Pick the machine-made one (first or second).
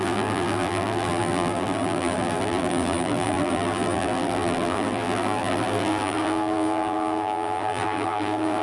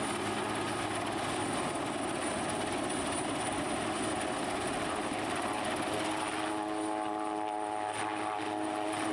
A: first